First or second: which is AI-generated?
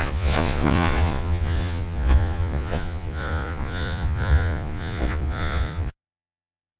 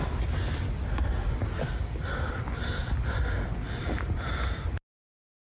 first